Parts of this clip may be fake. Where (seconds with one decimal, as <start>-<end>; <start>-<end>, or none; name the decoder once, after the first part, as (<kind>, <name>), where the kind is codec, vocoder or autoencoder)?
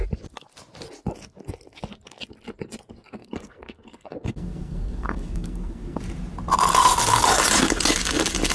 3.2-6.0 (codec, SNAC)